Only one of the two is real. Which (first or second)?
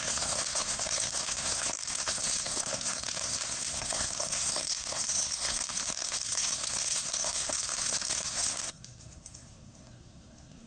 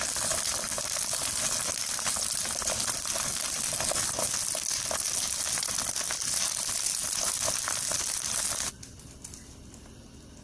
second